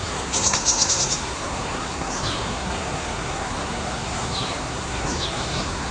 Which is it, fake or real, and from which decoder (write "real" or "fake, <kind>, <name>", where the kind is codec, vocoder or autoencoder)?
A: fake, codec, SNAC